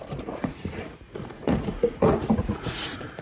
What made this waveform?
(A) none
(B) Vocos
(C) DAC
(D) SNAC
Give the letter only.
B